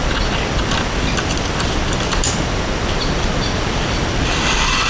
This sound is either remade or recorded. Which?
recorded